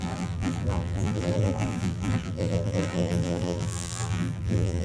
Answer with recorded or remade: remade